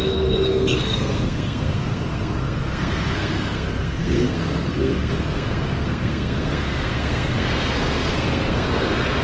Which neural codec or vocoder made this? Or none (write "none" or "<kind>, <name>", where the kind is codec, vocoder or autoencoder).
codec, SNAC